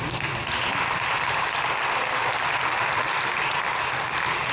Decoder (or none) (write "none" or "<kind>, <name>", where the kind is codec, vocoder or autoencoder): none